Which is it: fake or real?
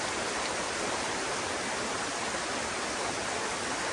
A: real